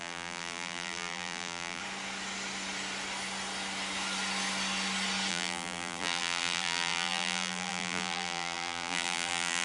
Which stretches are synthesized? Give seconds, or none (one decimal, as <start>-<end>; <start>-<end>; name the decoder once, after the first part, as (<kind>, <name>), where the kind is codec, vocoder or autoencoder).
0.0-1.8 (vocoder, BigVGAN v2); 5.3-9.6